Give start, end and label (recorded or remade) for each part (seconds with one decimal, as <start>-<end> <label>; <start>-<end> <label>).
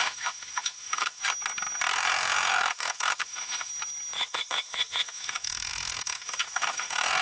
0.0-1.2 remade; 1.2-1.9 recorded; 1.9-3.7 remade; 3.7-4.2 recorded; 4.2-7.2 remade